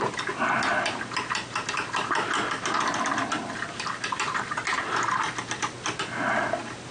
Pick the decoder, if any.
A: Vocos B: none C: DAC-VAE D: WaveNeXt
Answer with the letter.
B